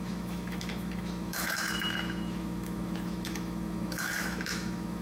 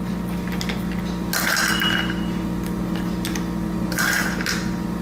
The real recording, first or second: second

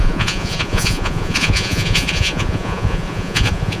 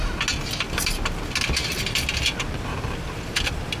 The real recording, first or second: second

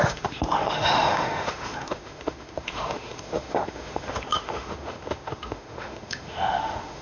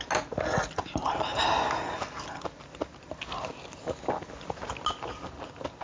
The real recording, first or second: second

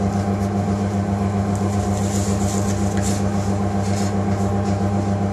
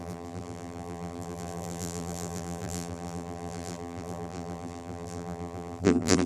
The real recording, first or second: first